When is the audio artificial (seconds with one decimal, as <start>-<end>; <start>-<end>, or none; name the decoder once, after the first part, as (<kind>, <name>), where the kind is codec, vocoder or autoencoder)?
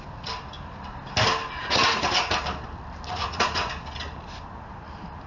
1.6-2.3 (vocoder, Vocos); 3.1-3.7